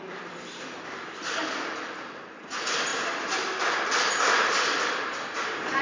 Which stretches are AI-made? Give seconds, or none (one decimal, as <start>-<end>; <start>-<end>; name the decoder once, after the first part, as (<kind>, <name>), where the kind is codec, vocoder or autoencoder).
2.9-4.8 (vocoder, BigVGAN v2)